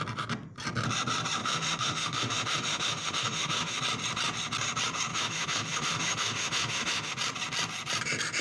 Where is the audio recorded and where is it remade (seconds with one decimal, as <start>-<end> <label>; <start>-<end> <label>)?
0.0-1.4 recorded; 1.4-3.8 remade; 3.8-5.1 recorded; 5.1-7.1 remade; 7.1-8.4 recorded